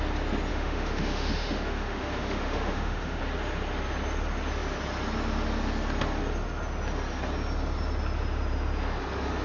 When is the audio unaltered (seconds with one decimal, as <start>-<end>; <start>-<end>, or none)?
0.0-0.5; 3.2-9.4